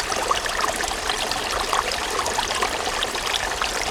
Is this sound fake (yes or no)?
yes